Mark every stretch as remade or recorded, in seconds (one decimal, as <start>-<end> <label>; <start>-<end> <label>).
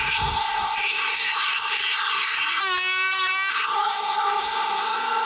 0.0-2.6 remade; 2.6-3.5 recorded; 3.5-5.3 remade